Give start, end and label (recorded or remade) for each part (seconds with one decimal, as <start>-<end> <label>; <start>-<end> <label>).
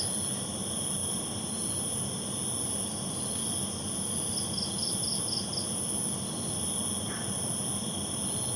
0.0-8.6 recorded